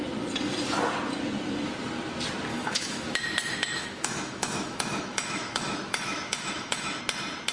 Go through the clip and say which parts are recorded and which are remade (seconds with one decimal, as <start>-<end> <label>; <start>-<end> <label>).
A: 0.0-2.5 recorded; 2.5-7.0 remade; 7.0-7.5 recorded